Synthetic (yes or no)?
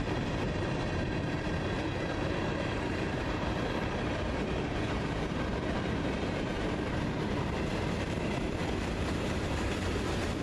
yes